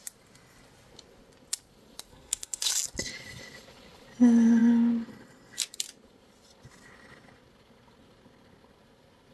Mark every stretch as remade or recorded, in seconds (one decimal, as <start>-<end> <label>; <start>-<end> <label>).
0.0-2.1 recorded; 2.1-2.7 remade; 2.7-9.3 recorded